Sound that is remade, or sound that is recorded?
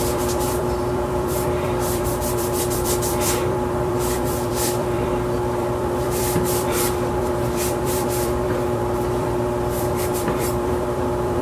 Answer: remade